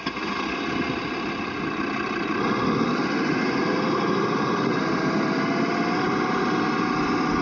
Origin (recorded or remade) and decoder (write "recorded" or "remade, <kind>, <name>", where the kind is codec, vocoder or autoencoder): recorded